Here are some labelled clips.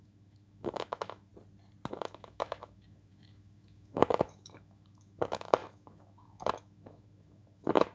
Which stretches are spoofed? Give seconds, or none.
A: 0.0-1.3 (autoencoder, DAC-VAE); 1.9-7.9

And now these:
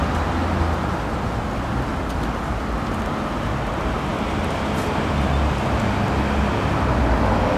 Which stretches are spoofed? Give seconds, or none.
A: none

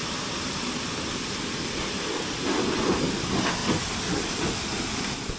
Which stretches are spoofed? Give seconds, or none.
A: none

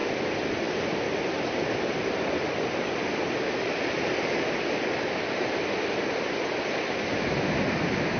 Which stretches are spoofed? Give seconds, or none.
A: none

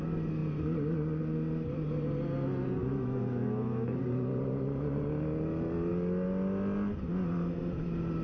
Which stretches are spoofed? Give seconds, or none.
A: 2.8-4.0 (autoencoder, DAC-VAE)